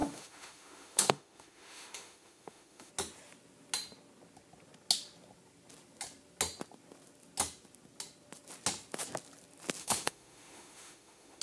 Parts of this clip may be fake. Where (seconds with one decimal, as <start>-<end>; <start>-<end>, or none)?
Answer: 0.0-2.9; 9.8-11.4